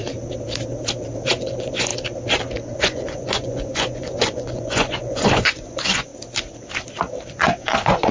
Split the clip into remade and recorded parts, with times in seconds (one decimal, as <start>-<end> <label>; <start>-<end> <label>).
0.0-1.2 recorded; 1.2-1.9 remade; 1.9-2.8 recorded; 2.8-6.1 remade; 6.1-7.3 recorded; 7.3-8.1 remade